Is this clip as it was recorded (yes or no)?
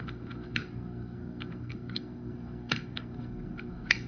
no